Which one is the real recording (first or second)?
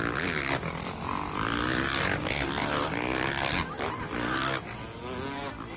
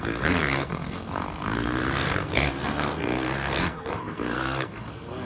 first